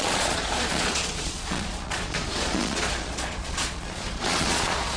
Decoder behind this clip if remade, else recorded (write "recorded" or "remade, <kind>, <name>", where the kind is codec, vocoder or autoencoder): remade, vocoder, Vocos